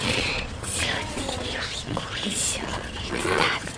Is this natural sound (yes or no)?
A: no